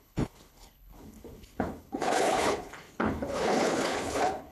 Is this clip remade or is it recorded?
remade